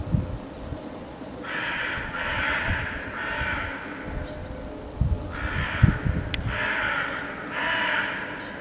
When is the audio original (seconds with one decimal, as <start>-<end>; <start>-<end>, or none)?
0.0-0.7; 2.8-6.8; 7.4-8.6